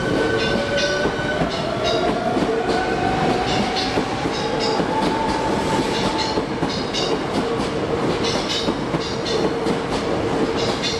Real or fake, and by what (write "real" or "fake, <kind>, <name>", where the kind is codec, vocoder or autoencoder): real